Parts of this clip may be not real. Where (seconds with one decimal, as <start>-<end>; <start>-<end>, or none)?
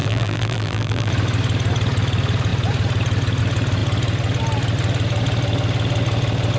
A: 0.0-1.1